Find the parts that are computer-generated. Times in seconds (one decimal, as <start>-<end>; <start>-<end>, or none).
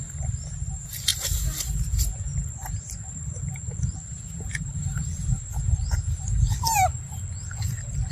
1.1-3.0; 3.4-6.2